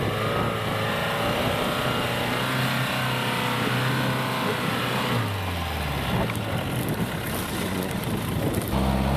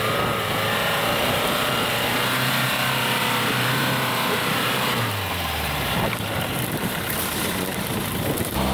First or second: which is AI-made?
second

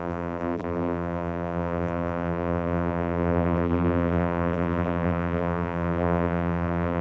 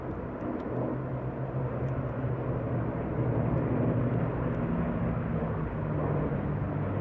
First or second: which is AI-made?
first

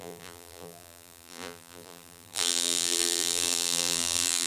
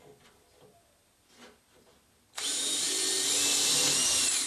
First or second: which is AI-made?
first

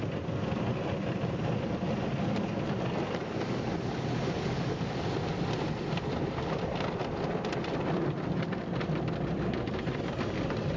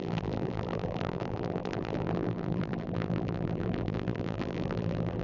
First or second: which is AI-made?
second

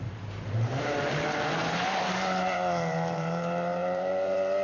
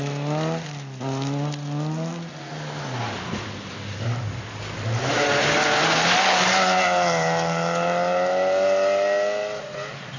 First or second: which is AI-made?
first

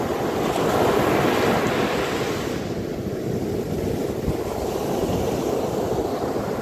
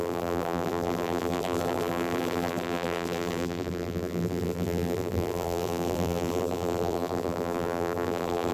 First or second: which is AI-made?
second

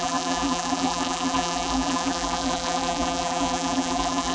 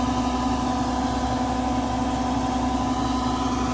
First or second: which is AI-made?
first